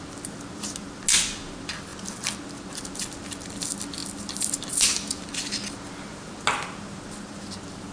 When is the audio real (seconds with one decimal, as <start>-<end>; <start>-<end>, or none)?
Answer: 0.0-7.9